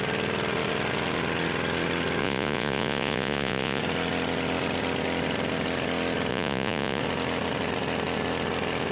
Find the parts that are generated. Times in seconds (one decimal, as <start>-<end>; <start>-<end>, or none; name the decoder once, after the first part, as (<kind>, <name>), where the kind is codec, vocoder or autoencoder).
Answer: 2.2-3.8 (vocoder, Vocos); 6.3-7.0